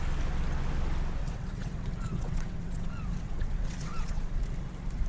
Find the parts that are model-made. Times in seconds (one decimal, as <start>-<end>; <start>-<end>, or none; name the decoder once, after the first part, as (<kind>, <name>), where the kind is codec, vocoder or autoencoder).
1.2-4.3 (vocoder, WaveNeXt)

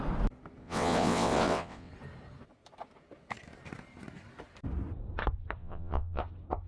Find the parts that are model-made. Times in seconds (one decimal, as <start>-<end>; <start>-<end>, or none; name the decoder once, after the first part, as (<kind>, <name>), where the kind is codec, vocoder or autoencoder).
0.6-1.9 (vocoder, WaveNeXt); 5.6-6.2

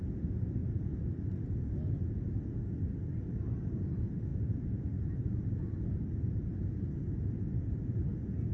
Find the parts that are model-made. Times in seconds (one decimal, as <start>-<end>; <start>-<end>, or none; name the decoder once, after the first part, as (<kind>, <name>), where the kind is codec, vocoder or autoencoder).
none

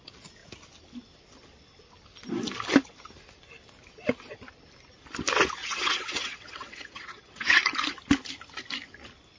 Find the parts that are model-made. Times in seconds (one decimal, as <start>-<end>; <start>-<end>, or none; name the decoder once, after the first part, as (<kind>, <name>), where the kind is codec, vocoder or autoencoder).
5.6-7.6 (vocoder, WaveNeXt)